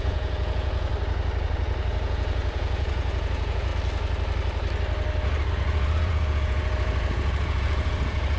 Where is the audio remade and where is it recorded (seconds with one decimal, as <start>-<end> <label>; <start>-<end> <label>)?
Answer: 0.0-0.9 remade; 0.9-1.4 recorded; 1.4-3.7 remade; 3.7-5.5 recorded; 5.5-8.4 remade